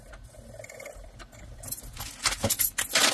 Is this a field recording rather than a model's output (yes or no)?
yes